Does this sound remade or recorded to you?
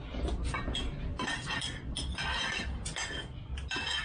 recorded